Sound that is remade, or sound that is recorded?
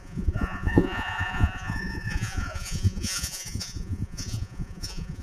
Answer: remade